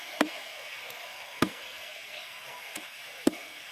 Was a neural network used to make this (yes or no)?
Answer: yes